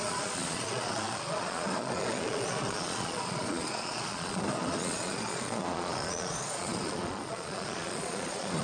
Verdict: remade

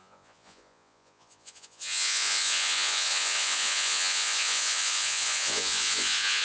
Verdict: remade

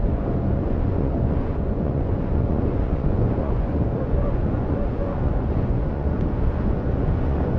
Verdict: remade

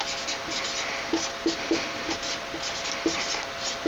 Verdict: recorded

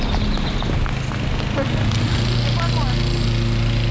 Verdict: recorded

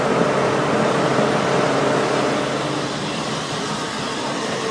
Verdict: recorded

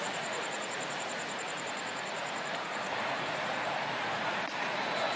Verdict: remade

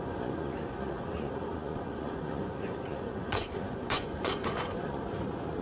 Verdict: remade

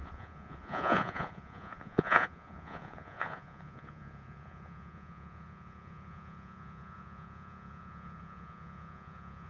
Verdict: remade